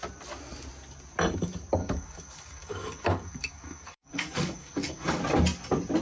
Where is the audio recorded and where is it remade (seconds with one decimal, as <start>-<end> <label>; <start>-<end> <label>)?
0.0-1.8 recorded; 1.8-5.2 remade; 5.2-6.0 recorded